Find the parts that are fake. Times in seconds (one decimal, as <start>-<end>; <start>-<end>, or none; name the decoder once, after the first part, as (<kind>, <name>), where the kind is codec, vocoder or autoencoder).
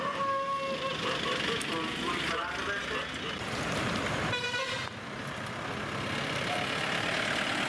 none